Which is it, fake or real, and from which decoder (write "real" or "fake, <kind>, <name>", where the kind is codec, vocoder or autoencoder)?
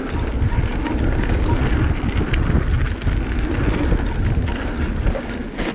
real